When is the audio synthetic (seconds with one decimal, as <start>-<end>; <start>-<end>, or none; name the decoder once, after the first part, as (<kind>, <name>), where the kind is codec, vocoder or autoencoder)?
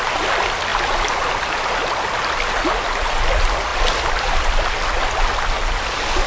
none